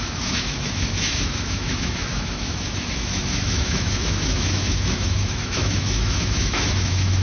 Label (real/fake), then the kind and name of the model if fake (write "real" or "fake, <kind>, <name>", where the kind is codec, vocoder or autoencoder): fake, autoencoder, DAC-VAE